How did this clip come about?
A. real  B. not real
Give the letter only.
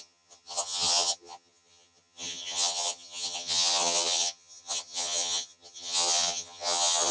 B